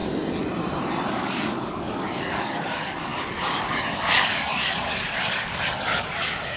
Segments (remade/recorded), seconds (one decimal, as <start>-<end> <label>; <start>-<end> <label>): 0.0-1.1 recorded; 1.1-6.6 remade